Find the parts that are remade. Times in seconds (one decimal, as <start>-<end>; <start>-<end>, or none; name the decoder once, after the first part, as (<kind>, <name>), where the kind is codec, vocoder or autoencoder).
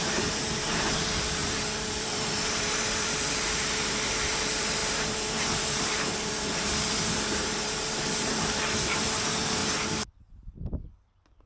0.0-9.6 (vocoder, BigVGAN v2); 10.3-11.5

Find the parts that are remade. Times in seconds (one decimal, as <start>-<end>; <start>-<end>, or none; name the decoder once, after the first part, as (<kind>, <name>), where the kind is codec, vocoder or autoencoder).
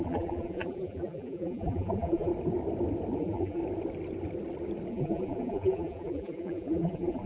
0.0-2.3 (vocoder, BigVGAN v2); 3.2-3.6; 4.9-7.3